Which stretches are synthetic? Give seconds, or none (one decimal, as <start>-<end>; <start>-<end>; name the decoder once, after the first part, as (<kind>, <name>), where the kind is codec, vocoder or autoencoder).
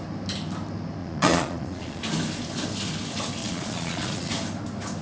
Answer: 1.0-2.0 (vocoder, Vocos); 3.4-4.3